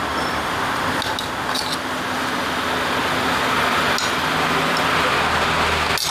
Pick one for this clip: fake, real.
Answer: real